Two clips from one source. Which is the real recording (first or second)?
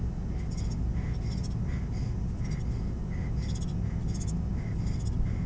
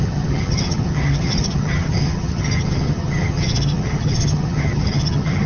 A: first